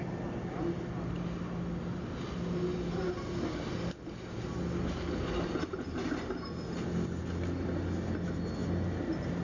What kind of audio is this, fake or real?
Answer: real